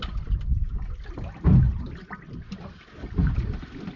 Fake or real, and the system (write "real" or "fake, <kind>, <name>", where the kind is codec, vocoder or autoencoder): real